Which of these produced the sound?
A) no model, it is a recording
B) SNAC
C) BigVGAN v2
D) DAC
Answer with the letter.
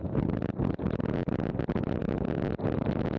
A